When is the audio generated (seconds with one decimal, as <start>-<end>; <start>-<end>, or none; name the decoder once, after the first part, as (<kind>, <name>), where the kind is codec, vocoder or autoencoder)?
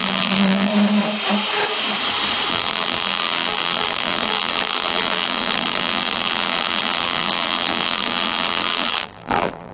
0.0-0.7 (vocoder, BigVGAN v2); 2.5-9.7